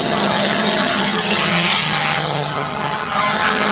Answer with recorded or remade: remade